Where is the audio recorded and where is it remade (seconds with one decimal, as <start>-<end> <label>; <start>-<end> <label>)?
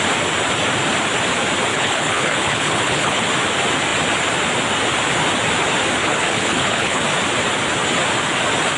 0.0-1.7 recorded; 1.7-3.2 remade; 3.2-6.0 recorded; 6.0-7.0 remade; 7.0-8.8 recorded